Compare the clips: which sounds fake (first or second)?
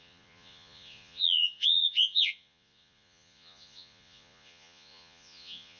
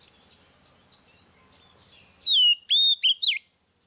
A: first